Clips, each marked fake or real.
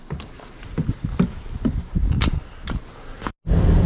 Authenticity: real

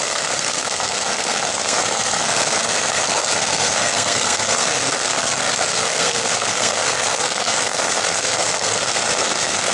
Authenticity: fake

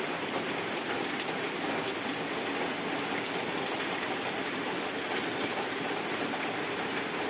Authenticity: real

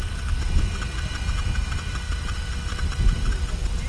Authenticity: real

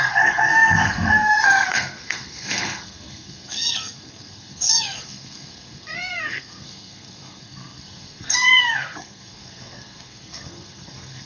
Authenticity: fake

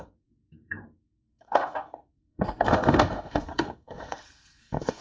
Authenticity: fake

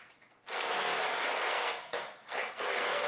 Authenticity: fake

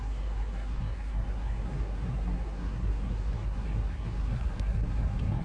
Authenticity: fake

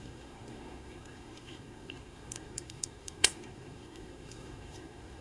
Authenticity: fake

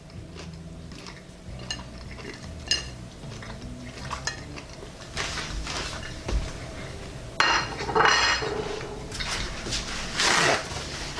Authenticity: real